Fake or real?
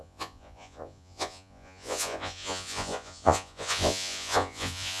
fake